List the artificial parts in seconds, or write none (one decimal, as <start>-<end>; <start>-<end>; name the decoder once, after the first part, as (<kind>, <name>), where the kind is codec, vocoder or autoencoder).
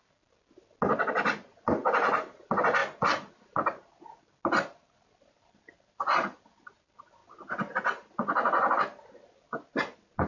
none